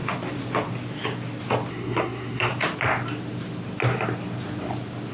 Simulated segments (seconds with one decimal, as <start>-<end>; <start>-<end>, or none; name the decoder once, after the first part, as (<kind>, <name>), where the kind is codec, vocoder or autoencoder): 1.7-2.5 (codec, SNAC)